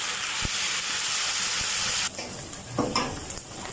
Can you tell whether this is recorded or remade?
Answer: recorded